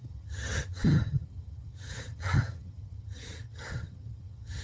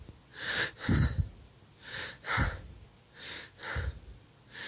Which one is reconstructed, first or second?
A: first